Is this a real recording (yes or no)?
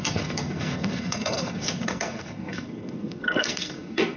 no